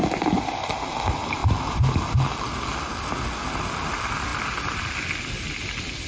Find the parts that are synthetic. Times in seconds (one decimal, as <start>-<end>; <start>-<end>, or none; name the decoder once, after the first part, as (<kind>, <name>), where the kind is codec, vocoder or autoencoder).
none